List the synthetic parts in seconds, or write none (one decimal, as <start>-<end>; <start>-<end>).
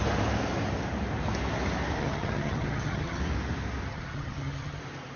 2.0-3.2; 3.9-4.8